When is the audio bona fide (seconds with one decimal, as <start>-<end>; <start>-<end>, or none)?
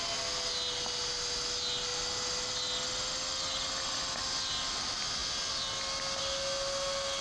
0.0-7.2